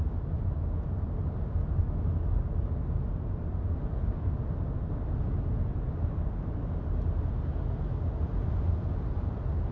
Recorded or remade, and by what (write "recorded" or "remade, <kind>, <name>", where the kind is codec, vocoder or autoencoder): recorded